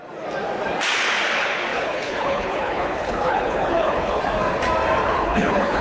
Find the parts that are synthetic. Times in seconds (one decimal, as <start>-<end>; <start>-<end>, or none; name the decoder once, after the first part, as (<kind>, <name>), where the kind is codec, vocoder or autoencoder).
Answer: 1.7-4.2 (codec, HILCodec); 5.0-5.8